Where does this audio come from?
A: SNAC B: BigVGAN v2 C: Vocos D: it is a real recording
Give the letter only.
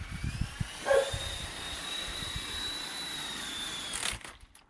D